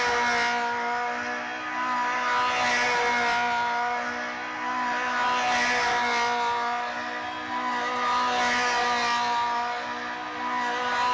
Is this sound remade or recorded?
recorded